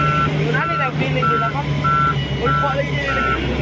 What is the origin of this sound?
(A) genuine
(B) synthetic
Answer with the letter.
A